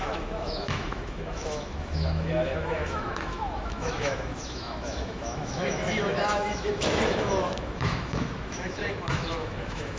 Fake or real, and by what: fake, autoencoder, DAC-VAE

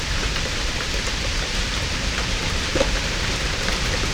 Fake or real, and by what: fake, vocoder, BigVGAN v2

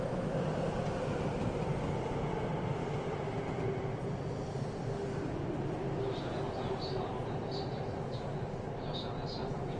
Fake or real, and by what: real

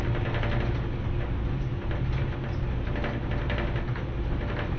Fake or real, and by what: real